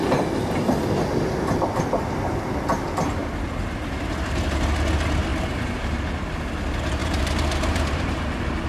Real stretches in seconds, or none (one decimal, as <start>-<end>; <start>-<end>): 0.0-5.3; 6.0-7.0; 8.2-8.7